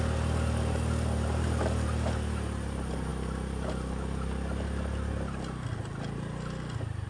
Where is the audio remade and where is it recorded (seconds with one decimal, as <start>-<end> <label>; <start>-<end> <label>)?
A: 0.0-7.1 recorded